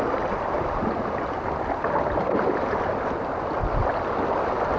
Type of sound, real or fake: real